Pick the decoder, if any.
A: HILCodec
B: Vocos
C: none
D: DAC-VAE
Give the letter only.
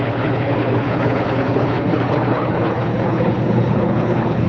A